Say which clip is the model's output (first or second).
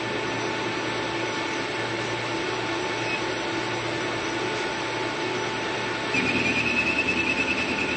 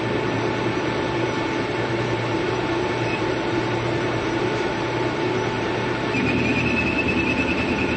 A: second